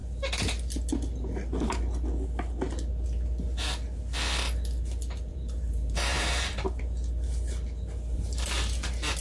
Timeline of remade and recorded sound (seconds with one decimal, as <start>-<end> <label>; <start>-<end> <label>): 0.0-5.3 recorded; 5.3-6.8 remade; 6.8-9.2 recorded